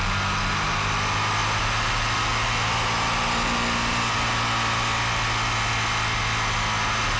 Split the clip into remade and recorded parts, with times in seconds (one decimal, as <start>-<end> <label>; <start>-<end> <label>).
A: 0.0-7.2 recorded